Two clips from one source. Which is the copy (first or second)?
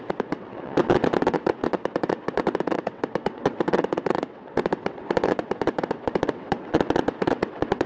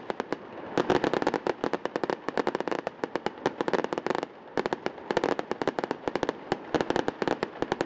first